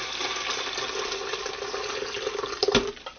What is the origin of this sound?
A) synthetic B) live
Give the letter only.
B